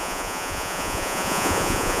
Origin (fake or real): fake